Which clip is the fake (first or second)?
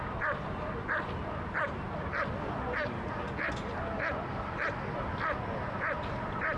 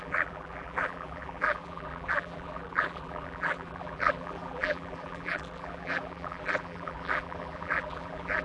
second